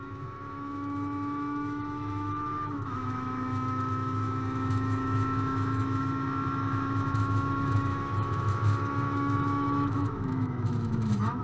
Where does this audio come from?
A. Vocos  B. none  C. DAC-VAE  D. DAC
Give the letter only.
C